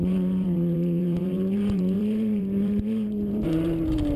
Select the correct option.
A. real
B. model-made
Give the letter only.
B